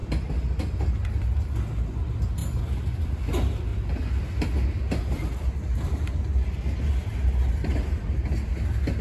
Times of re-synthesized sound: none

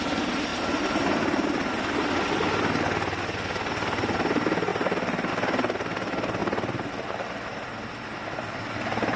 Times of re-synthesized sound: none

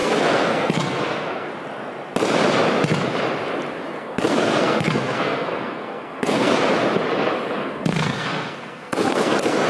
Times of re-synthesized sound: 0.0-1.5; 3.9-6.6; 7.6-9.7

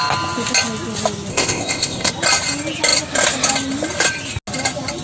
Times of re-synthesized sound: 1.3-2.1